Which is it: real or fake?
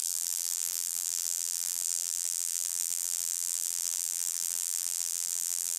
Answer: fake